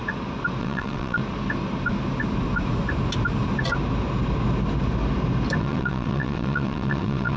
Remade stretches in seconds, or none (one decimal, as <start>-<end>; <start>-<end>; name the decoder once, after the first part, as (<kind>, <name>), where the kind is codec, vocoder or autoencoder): 0.6-1.2 (vocoder, WaveNeXt); 5.6-7.4